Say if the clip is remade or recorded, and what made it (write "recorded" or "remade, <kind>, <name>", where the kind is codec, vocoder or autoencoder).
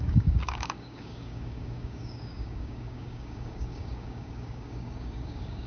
remade, codec, DAC